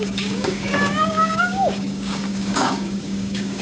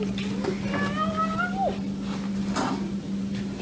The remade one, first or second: first